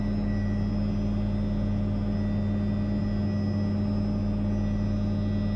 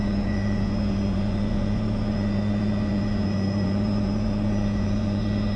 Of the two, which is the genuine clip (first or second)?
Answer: first